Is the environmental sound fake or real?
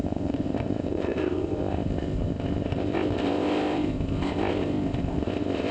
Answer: fake